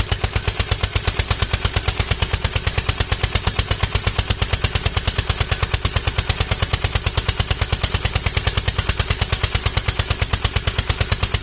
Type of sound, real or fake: real